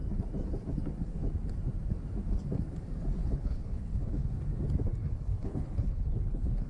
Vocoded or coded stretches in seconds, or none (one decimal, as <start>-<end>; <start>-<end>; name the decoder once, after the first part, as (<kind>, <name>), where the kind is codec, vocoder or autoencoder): 3.2-4.3 (codec, HILCodec); 5.0-6.7